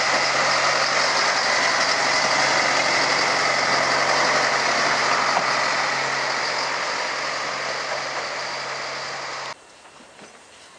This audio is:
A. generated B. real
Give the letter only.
B